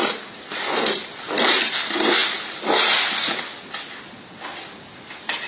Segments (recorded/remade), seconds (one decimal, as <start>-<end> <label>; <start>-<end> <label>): 0.0-5.5 recorded